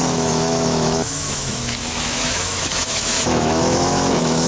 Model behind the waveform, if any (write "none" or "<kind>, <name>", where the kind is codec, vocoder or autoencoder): autoencoder, DAC-VAE